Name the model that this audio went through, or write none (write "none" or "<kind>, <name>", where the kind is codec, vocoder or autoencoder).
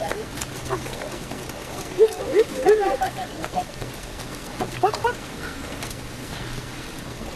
codec, SNAC